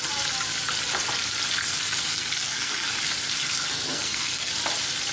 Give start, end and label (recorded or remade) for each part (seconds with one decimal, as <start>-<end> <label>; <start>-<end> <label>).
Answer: 0.0-1.6 recorded; 1.6-3.0 remade; 3.0-3.4 recorded; 3.4-4.5 remade; 4.5-5.1 recorded